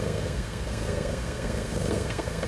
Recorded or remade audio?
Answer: remade